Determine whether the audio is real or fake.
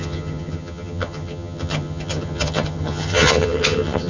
fake